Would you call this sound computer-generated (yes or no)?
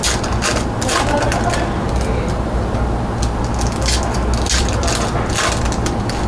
no